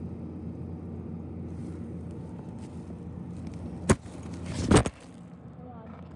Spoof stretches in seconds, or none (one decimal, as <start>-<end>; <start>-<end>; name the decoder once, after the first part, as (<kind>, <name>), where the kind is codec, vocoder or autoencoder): none